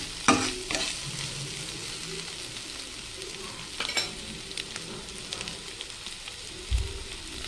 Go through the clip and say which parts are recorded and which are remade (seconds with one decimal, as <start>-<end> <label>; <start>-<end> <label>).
0.0-7.5 recorded